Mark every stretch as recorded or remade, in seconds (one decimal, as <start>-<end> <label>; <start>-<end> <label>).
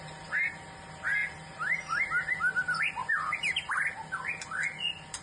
0.0-1.2 recorded; 1.2-2.0 remade; 2.0-3.0 recorded; 3.0-3.7 remade; 3.7-5.2 recorded